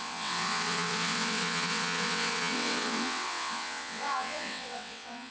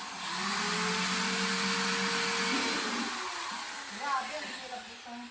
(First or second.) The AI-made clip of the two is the first